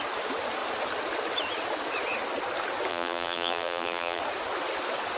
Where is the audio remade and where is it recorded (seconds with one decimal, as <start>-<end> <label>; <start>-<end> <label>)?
0.0-2.9 recorded; 2.9-4.2 remade; 4.2-5.2 recorded